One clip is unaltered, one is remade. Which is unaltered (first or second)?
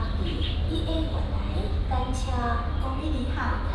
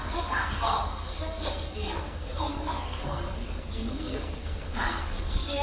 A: first